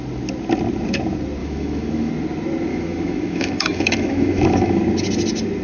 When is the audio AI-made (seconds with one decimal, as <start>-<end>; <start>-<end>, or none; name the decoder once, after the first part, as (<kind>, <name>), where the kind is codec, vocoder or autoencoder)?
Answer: 1.4-2.1 (autoencoder, DAC-VAE); 2.7-4.8